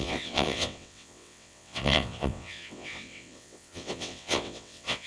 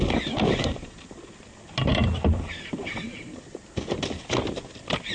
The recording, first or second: second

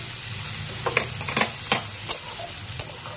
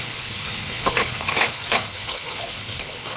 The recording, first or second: first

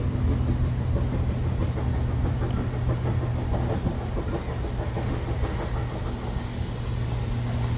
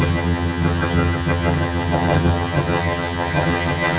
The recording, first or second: first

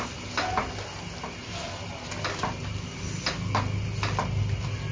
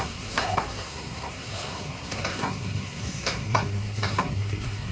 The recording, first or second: first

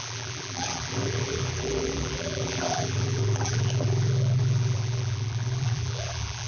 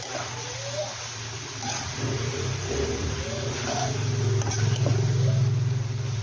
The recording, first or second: second